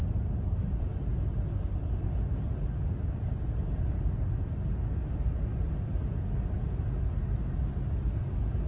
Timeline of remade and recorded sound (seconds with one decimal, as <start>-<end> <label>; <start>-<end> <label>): 0.0-8.7 recorded